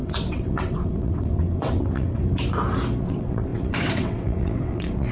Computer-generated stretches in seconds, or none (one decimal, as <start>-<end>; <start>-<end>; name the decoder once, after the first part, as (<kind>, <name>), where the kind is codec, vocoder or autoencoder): 0.0-2.2 (vocoder, WaveNeXt); 3.0-5.1